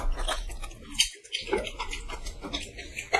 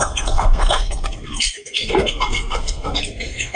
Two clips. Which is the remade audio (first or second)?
second